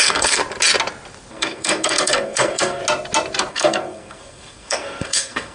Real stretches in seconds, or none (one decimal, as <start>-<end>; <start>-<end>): 0.4-1.3; 2.8-3.5